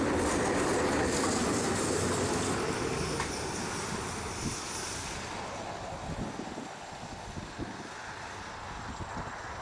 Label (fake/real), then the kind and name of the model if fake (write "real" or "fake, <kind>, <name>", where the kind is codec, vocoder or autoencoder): real